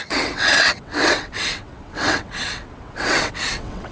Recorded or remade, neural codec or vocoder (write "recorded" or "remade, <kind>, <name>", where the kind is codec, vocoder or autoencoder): remade, vocoder, WaveNeXt